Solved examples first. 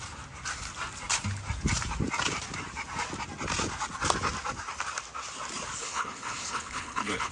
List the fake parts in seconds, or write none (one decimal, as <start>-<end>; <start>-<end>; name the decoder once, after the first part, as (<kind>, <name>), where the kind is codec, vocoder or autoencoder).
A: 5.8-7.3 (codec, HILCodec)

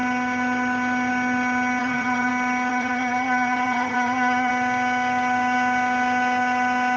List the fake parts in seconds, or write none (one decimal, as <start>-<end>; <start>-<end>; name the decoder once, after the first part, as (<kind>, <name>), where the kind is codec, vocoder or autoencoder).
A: 1.8-2.3 (vocoder, HiFi-GAN); 2.7-4.5

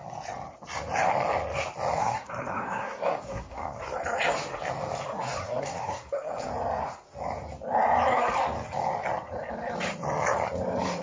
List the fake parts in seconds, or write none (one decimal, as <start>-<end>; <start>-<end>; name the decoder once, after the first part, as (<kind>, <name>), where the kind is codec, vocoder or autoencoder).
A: 2.0-3.8 (codec, SNAC); 5.4-6.5